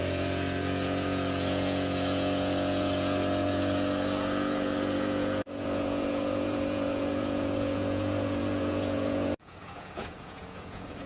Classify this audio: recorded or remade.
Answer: remade